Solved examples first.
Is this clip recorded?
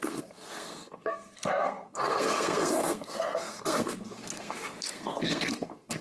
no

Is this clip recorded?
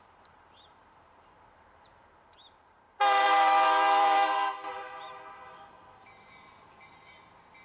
no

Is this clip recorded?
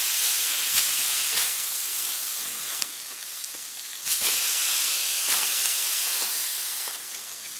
no